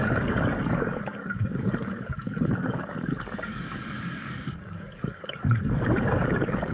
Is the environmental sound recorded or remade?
remade